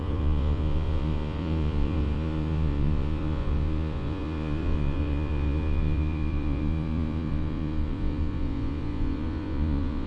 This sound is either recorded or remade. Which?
remade